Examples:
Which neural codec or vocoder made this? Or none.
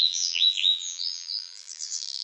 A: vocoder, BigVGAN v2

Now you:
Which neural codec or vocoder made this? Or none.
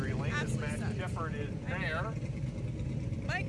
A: none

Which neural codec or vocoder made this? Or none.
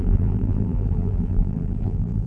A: vocoder, BigVGAN v2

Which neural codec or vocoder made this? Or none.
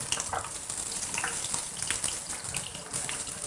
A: none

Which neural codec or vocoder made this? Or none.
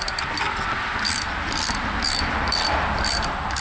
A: vocoder, BigVGAN v2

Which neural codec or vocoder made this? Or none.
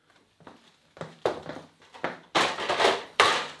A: vocoder, BigVGAN v2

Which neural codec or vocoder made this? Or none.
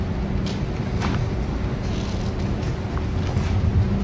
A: none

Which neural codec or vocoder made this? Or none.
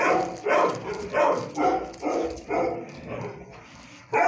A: none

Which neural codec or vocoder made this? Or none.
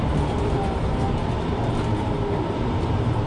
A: vocoder, BigVGAN v2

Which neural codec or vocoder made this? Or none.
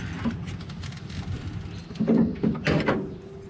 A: none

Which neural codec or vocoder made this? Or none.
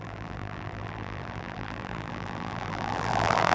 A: vocoder, BigVGAN v2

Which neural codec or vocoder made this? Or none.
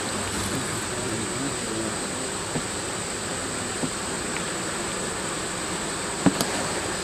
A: none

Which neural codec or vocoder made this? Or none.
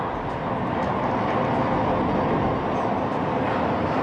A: none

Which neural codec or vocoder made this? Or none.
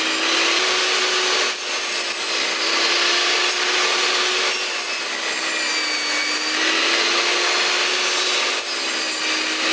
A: none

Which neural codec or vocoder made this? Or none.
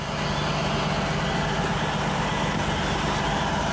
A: none